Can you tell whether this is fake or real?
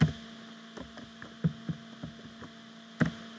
real